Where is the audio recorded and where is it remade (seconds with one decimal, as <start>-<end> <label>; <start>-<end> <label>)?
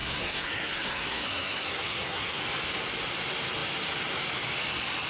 0.0-2.4 remade; 2.4-5.1 recorded